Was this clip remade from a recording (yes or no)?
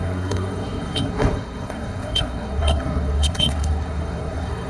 yes